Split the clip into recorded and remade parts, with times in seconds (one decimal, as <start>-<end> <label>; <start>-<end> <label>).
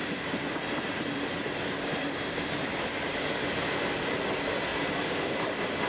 0.0-3.5 remade; 3.5-4.7 recorded; 4.7-5.9 remade